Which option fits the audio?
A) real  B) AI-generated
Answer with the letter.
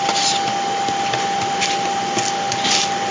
A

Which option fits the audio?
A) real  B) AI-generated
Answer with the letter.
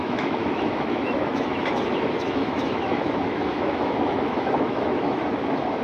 B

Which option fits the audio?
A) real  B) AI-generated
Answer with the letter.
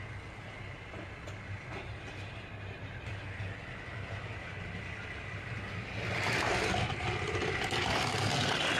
A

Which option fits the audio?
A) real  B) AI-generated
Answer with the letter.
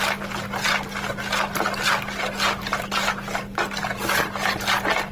A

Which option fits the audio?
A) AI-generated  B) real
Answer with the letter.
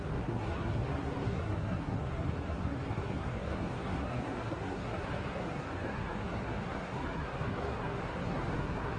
A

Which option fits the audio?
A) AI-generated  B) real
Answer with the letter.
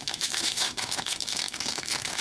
A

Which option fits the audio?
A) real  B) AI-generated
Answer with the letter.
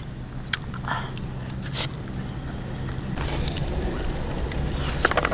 A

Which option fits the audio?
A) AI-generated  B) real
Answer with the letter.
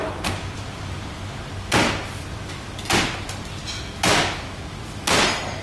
B